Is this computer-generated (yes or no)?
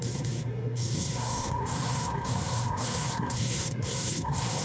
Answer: yes